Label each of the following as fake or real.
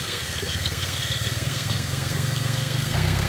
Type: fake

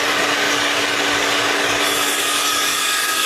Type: fake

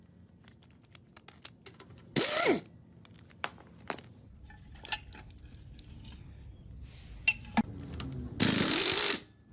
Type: real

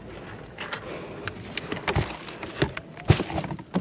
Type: real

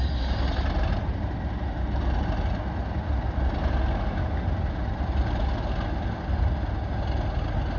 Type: real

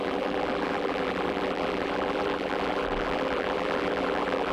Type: fake